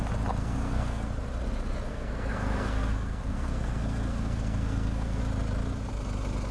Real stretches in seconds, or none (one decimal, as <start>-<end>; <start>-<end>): 0.0-0.4; 1.1-1.9; 5.2-6.5